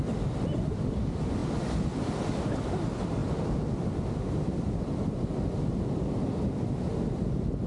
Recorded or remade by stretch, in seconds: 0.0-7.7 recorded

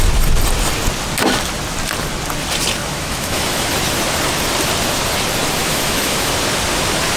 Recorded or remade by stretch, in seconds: 0.0-2.8 recorded; 2.8-3.7 remade; 3.7-5.6 recorded; 5.6-6.3 remade; 6.3-7.2 recorded

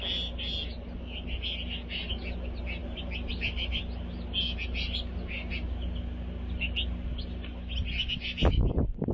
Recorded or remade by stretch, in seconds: 0.0-9.1 recorded